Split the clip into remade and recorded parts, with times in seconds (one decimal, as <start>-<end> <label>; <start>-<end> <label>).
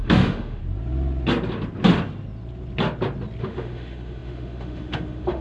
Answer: 0.0-0.6 remade; 0.6-3.4 recorded; 3.4-5.4 remade